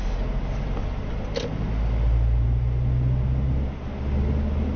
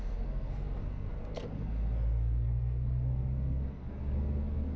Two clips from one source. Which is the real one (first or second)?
first